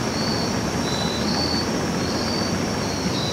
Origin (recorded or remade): recorded